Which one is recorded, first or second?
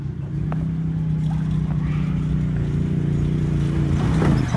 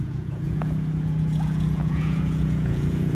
first